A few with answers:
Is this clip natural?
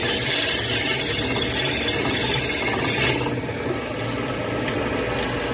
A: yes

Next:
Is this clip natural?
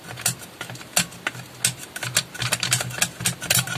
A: yes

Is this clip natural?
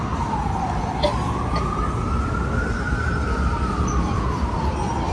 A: yes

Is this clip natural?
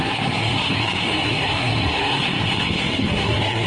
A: no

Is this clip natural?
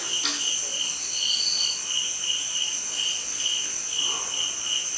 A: yes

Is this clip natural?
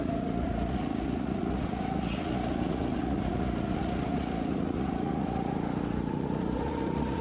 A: no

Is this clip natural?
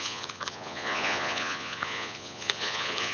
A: no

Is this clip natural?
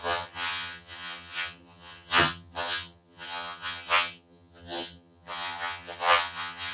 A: no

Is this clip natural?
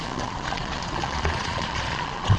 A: no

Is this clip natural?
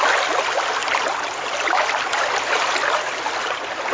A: yes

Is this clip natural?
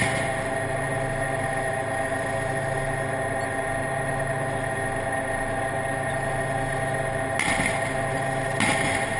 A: yes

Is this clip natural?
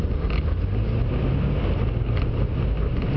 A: yes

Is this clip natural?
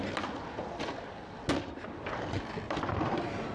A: yes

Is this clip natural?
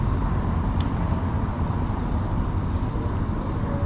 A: yes